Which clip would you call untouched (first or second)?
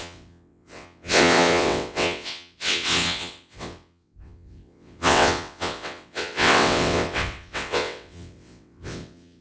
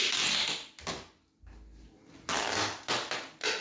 second